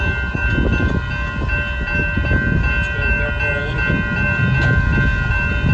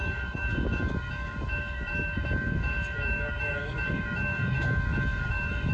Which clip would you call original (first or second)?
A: first